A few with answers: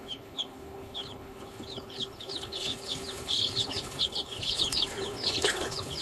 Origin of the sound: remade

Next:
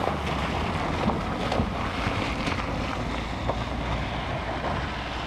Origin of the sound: recorded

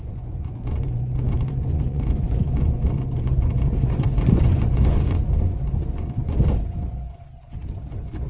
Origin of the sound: remade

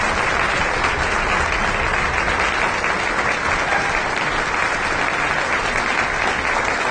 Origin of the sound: recorded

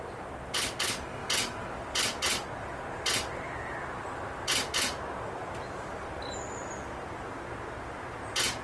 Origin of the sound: recorded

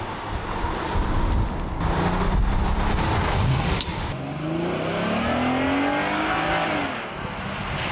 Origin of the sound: recorded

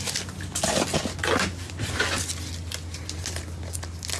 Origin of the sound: recorded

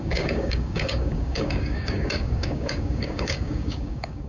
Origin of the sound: remade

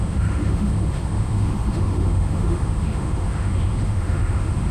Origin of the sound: remade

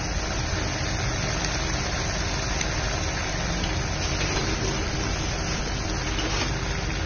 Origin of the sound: recorded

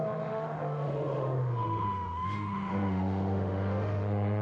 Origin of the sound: remade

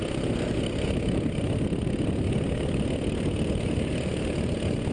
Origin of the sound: recorded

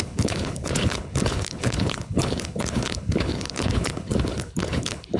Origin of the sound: remade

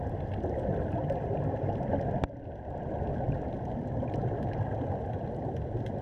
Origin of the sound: recorded